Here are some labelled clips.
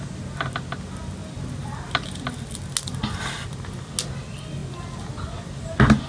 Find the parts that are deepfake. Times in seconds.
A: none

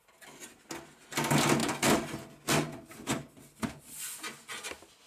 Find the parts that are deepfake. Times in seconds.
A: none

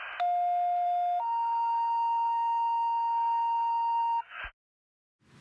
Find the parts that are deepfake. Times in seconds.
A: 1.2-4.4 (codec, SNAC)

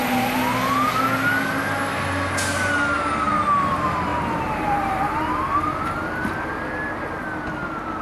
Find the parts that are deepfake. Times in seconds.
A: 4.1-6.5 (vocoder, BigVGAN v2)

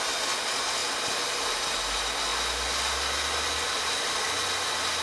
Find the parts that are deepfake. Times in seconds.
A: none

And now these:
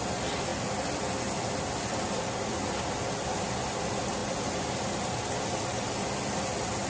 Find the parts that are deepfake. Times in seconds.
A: none